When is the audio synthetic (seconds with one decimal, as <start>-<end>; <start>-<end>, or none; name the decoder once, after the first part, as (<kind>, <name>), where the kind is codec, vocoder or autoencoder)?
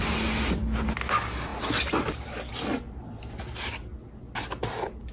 none